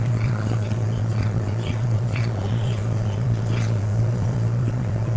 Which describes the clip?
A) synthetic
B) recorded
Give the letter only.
A